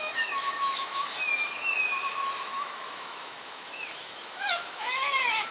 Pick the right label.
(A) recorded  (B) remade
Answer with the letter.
B